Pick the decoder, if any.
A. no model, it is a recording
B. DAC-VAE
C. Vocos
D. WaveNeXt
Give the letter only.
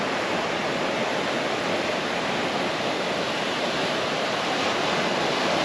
A